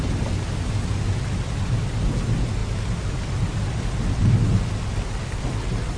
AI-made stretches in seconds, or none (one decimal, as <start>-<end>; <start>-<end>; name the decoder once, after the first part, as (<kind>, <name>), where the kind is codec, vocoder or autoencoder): none